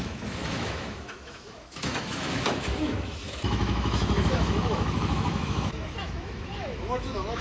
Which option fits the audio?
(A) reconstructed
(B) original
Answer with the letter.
A